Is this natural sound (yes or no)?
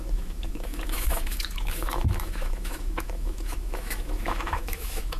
no